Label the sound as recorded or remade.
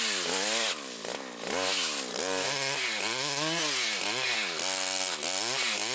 recorded